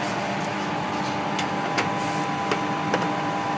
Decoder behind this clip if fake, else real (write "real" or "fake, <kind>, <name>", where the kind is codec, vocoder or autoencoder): real